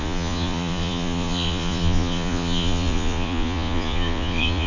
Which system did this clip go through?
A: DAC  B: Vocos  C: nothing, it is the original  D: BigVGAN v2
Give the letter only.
B